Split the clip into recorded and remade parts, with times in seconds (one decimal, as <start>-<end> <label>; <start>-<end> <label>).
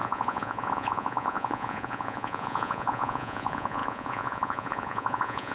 0.0-5.5 remade